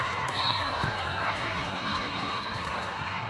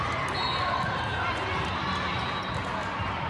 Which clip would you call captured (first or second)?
second